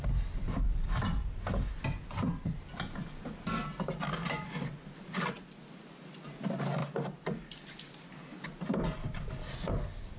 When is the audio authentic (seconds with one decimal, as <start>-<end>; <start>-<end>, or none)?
0.0-10.2